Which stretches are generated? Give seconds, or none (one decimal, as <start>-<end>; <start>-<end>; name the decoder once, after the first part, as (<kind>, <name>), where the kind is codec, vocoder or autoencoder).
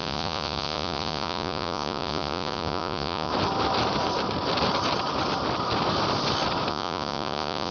0.0-3.3 (vocoder, Vocos); 6.7-7.7